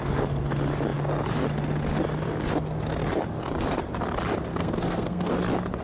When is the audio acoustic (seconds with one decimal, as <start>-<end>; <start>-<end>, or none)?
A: 0.0-4.5; 5.3-5.8